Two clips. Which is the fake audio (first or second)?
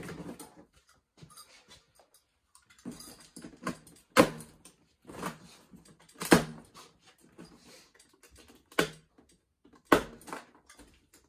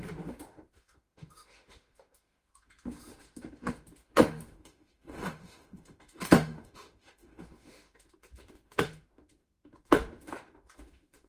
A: second